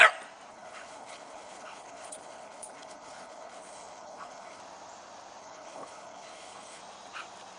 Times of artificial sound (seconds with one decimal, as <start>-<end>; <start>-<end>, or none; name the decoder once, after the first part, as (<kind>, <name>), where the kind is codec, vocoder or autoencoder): 0.5-4.6 (codec, HILCodec); 5.4-6.8